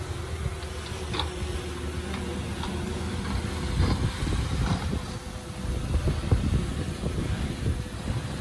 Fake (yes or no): no